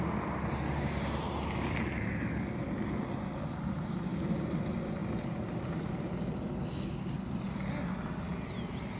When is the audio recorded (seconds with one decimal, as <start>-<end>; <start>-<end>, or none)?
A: 0.0-5.0; 5.8-9.0